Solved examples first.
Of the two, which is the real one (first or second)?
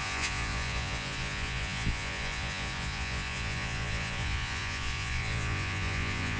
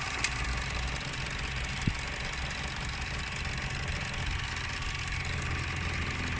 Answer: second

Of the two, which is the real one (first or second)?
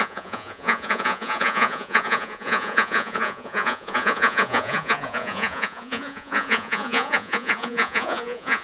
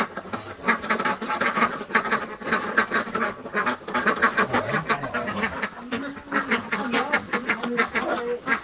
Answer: second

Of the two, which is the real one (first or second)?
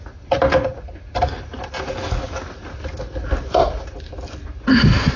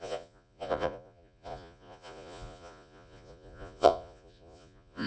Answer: first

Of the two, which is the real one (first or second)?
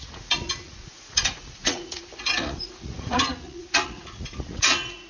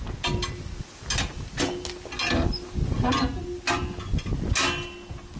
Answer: second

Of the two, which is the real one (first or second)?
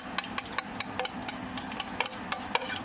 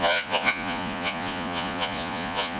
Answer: first